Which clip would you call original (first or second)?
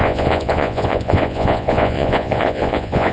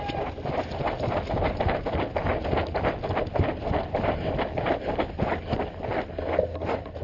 second